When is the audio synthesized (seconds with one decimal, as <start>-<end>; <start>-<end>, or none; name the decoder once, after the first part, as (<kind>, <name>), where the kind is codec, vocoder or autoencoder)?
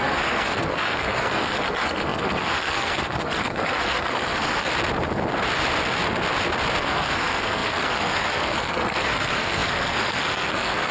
0.0-4.7 (codec, SNAC); 6.8-10.9